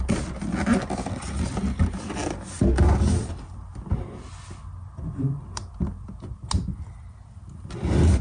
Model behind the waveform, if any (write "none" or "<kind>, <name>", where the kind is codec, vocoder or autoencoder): none